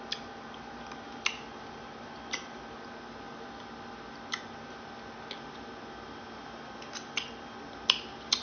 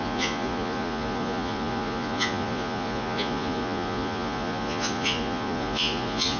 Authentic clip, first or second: first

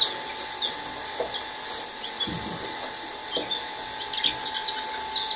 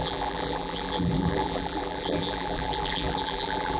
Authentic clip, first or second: first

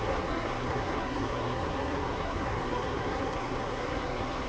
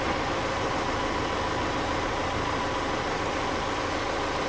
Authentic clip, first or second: second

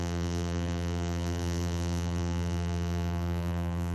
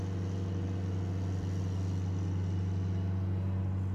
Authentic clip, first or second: second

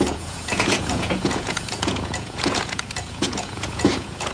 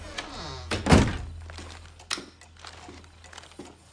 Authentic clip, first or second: second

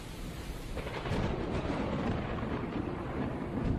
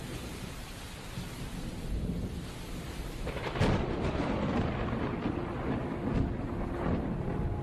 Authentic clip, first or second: second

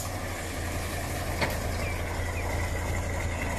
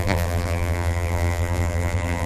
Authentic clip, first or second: first